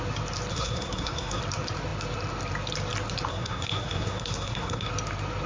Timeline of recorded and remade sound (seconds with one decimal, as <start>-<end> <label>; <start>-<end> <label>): 0.0-0.5 recorded; 0.5-1.4 remade; 1.4-3.3 recorded; 3.3-4.9 remade; 4.9-5.5 recorded